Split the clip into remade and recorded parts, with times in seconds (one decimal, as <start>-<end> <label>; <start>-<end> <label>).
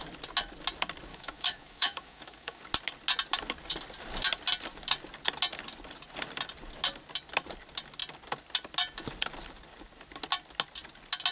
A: 0.0-1.1 recorded; 1.1-2.6 remade; 2.6-11.3 recorded